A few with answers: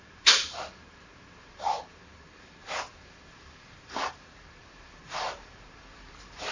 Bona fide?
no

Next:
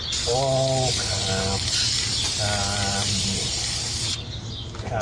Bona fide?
yes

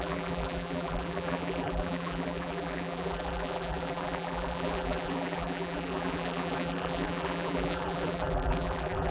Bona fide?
no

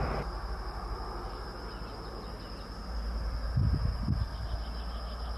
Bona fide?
yes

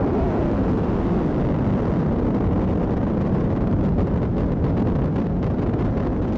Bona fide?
no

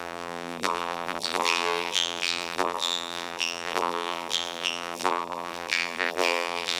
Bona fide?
no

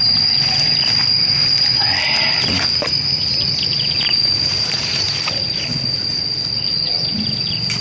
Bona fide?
no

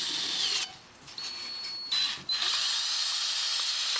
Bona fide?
yes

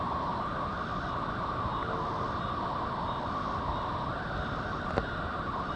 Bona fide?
yes